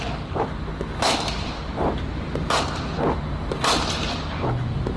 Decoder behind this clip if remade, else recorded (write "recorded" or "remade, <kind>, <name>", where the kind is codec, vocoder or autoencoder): recorded